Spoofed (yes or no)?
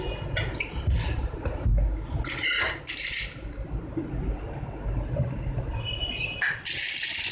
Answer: no